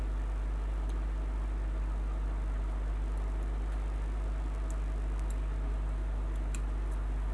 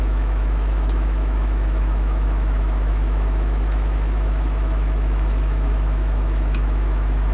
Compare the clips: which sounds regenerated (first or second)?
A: second